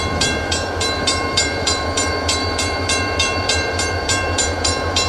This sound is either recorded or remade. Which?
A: remade